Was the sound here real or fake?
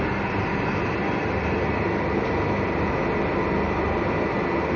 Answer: real